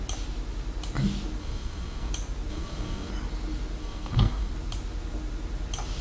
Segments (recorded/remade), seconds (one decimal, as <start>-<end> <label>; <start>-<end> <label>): 0.0-1.4 recorded; 1.4-2.1 remade; 2.1-2.5 recorded; 2.5-3.1 remade; 3.1-3.8 recorded; 3.8-4.5 remade; 4.5-6.0 recorded